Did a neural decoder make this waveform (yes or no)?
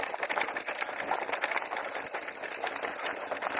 no